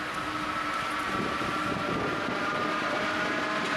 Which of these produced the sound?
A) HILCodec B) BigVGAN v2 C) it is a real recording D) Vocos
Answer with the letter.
C